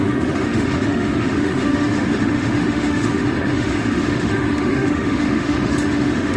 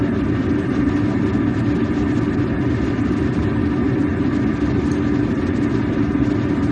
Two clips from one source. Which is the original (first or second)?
second